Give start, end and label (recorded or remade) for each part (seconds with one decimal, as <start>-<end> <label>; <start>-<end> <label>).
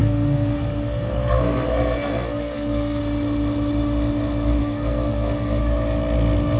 0.0-3.0 remade; 3.0-4.6 recorded; 4.6-5.6 remade; 5.6-6.6 recorded